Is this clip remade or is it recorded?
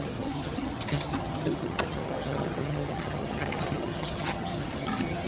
remade